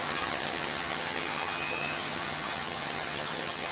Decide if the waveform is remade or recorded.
remade